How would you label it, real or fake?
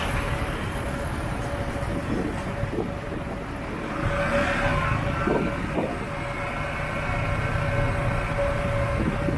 real